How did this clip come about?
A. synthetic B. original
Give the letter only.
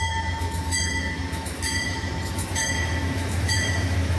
A